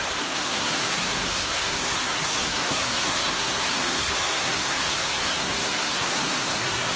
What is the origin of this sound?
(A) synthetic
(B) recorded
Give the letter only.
A